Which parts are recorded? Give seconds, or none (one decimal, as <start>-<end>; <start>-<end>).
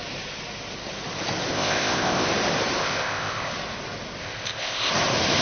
0.0-1.5; 2.3-2.8; 3.5-4.2; 4.9-5.4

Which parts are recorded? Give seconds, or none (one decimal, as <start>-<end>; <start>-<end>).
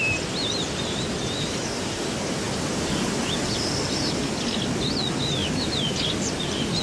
0.0-6.8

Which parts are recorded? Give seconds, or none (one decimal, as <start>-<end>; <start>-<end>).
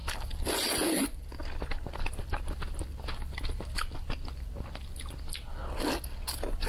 0.0-6.7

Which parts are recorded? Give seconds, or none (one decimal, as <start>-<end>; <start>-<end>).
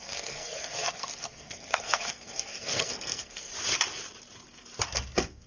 3.5-4.9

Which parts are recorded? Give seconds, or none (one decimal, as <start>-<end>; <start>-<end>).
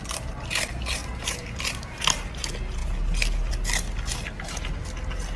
0.0-1.0; 2.3-5.4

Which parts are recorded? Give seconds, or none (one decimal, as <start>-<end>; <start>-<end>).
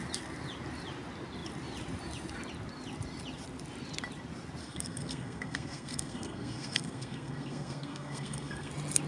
0.0-4.6; 8.7-9.1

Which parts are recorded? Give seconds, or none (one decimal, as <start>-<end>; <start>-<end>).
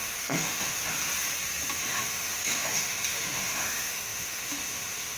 0.8-1.8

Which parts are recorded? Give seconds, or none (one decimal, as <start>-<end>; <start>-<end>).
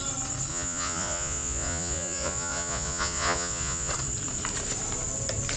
0.0-0.5; 3.9-5.6